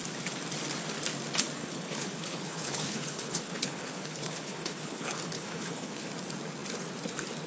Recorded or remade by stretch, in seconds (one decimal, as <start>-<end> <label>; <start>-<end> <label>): 0.0-1.6 recorded; 1.6-6.1 remade; 6.1-7.5 recorded